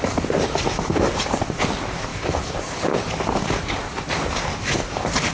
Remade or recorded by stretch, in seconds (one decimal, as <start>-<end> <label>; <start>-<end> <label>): 0.0-5.3 recorded